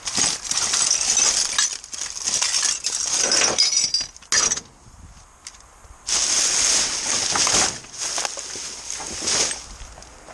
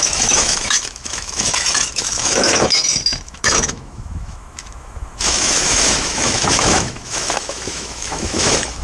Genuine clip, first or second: first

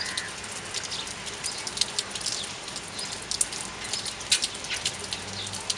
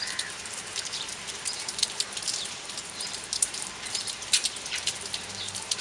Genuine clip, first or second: first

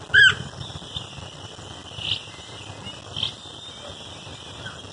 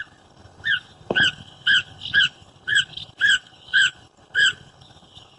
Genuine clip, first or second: first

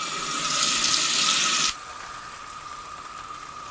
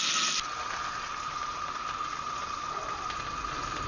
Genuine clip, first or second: second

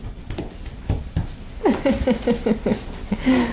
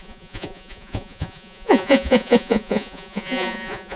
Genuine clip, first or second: first